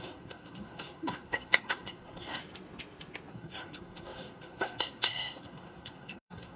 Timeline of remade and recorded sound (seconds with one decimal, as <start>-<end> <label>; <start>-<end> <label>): 0.0-2.4 remade; 2.4-3.3 recorded; 3.3-6.6 remade